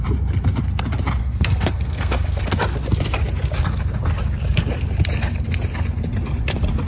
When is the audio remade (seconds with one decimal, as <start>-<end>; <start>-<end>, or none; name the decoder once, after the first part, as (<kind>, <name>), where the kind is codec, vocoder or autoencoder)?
1.2-2.4 (codec, SNAC)